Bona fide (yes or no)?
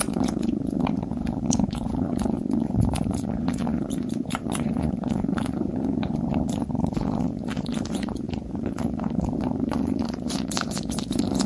no